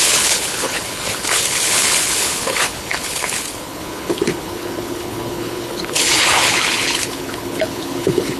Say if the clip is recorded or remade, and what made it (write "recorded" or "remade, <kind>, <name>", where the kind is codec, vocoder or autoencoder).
remade, codec, HILCodec